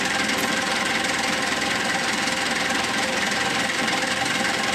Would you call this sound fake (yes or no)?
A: yes